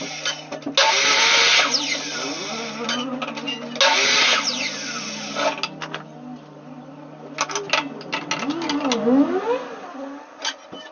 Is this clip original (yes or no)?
yes